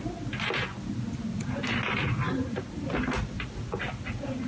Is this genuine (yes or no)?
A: yes